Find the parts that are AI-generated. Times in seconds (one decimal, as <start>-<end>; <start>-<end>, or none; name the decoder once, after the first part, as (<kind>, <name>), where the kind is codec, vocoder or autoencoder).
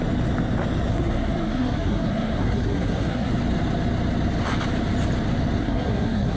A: 0.9-3.3 (codec, SNAC); 5.6-6.4